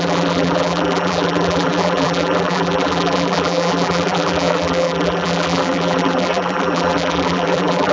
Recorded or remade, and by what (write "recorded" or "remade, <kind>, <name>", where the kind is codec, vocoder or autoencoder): remade, vocoder, BigVGAN v2